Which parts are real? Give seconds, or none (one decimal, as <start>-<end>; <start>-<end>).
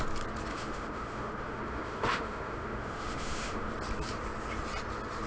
0.0-0.5; 3.7-5.3